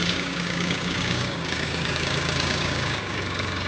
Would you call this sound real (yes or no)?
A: no